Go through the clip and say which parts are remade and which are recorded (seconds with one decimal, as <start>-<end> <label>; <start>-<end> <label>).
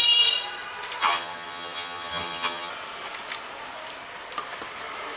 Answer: 0.0-1.0 recorded; 1.0-2.7 remade; 2.7-5.2 recorded